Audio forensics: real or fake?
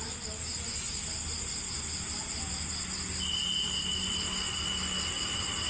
real